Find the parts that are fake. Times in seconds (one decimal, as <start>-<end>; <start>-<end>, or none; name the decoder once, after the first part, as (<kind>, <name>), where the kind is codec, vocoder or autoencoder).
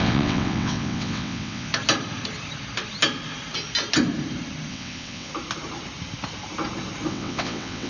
0.0-1.7 (vocoder, WaveNeXt); 4.7-5.3; 7.1-7.9